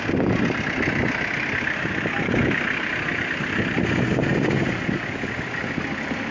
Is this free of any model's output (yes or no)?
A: yes